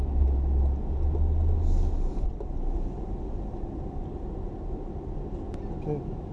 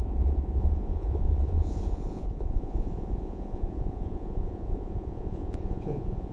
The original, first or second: first